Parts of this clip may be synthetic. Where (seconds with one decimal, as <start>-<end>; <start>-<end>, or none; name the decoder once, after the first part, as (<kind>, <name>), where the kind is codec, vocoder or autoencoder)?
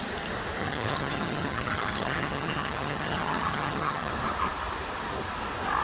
0.6-4.1 (vocoder, HiFi-GAN)